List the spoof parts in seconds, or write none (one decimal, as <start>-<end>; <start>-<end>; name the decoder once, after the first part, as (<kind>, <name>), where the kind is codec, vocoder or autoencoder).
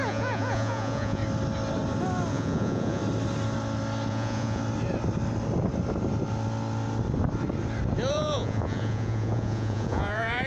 0.0-1.2 (vocoder, Vocos); 2.3-3.0; 4.1-4.6; 8.1-10.5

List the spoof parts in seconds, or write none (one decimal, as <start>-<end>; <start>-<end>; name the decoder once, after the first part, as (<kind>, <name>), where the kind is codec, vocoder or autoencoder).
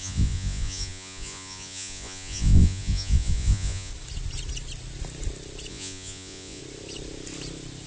0.0-3.9 (vocoder, Vocos); 5.7-6.6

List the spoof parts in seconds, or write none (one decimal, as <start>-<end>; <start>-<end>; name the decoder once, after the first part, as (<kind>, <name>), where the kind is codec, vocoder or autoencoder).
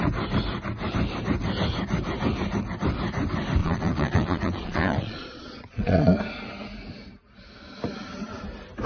3.6-6.1 (vocoder, Vocos)